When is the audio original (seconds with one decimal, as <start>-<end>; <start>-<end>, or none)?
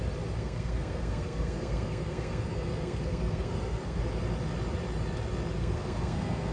0.0-0.4; 4.0-5.6